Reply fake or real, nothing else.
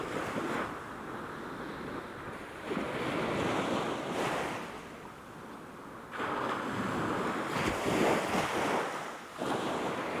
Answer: real